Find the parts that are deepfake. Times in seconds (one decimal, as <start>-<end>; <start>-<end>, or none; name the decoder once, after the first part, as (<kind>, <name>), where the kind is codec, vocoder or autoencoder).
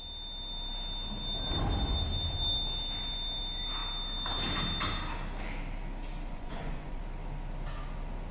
6.3-7.0 (vocoder, Vocos)